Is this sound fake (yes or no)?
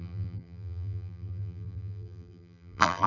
yes